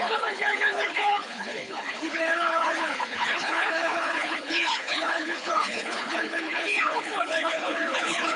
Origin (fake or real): fake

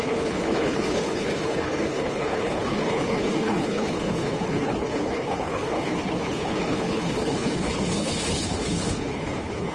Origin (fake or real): fake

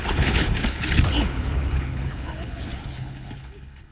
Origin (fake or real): fake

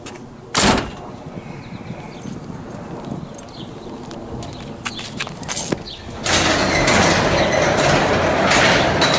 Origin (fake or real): real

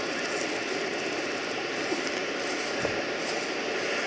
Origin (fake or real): real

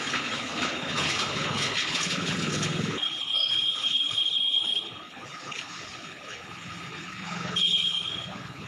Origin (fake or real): fake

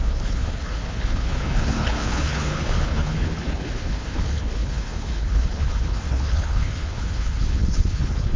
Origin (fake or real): fake